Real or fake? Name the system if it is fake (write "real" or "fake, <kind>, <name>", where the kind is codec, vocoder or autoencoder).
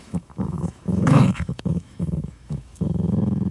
fake, autoencoder, DAC-VAE